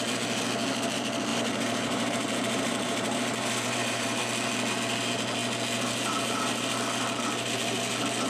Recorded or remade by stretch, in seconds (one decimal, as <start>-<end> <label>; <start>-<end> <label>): 0.0-1.3 recorded; 1.3-4.2 remade; 4.2-8.3 recorded